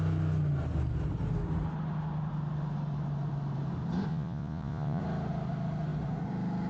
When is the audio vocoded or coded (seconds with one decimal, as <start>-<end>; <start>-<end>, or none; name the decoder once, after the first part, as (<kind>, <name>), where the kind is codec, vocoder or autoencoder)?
4.1-5.0 (vocoder, Vocos)

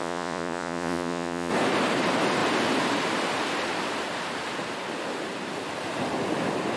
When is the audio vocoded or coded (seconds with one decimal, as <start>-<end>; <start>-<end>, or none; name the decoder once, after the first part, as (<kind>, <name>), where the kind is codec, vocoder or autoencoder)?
0.0-1.5 (vocoder, Vocos)

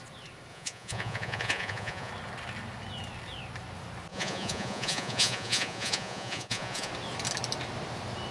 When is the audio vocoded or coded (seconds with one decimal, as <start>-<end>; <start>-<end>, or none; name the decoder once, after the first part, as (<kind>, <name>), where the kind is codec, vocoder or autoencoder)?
0.5-2.1 (vocoder, Vocos); 4.1-6.9

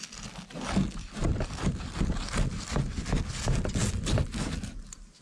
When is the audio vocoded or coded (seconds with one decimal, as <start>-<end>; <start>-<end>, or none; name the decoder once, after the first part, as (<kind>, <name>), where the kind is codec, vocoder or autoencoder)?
none

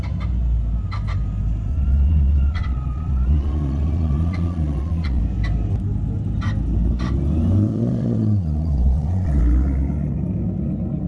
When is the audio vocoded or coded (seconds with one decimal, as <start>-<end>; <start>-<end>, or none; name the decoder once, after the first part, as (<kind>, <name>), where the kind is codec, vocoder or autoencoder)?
1.7-5.2 (vocoder, Vocos); 7.7-9.4

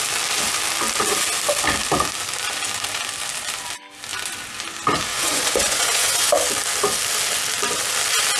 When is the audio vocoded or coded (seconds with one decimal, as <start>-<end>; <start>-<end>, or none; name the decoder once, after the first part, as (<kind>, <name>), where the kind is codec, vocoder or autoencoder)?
5.1-6.3 (vocoder, Vocos)